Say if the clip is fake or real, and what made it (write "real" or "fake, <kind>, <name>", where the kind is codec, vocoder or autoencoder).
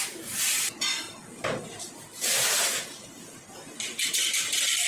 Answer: fake, vocoder, BigVGAN v2